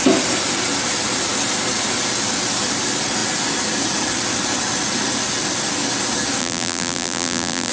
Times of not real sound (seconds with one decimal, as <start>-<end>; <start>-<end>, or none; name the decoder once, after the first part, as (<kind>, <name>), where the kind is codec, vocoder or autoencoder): 6.4-7.7 (vocoder, BigVGAN v2)